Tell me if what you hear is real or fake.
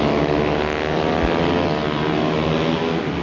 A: real